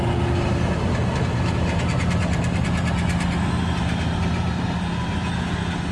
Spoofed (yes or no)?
no